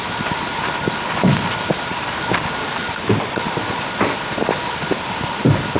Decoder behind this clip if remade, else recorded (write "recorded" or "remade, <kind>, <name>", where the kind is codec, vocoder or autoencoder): recorded